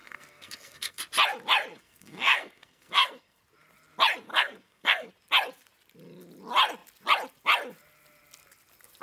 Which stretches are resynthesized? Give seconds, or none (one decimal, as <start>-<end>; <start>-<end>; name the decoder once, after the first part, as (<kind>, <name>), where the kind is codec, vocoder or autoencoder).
0.0-1.0 (codec, SNAC); 1.7-3.4; 4.3-5.1